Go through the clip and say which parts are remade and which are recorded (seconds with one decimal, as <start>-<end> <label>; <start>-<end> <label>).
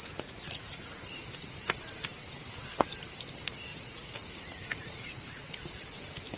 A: 0.0-1.0 remade; 1.0-3.7 recorded; 3.7-5.5 remade; 5.5-6.4 recorded